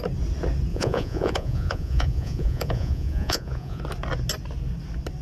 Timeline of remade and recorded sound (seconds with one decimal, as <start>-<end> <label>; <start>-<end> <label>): 0.0-0.7 recorded; 0.7-3.8 remade; 3.8-5.2 recorded